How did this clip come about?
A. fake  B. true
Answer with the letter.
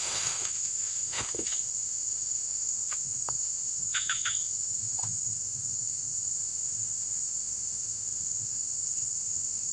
A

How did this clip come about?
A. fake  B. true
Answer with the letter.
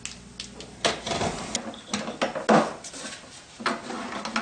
B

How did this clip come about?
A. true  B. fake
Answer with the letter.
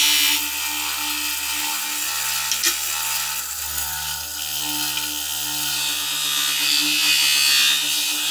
A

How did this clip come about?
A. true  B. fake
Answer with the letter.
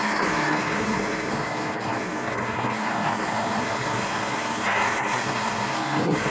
B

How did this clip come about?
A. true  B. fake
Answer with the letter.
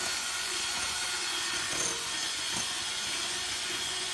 B